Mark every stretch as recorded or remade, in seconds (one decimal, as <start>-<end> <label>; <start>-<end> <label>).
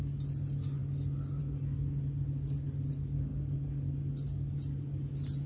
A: 0.0-5.5 recorded